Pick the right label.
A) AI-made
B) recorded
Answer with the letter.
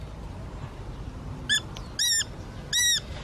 B